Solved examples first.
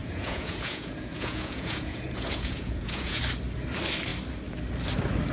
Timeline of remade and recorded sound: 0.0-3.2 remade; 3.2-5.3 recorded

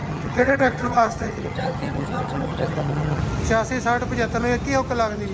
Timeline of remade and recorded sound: 0.0-3.2 remade; 3.2-5.3 recorded

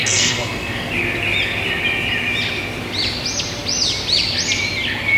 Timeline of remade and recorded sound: 0.0-0.9 remade; 0.9-5.2 recorded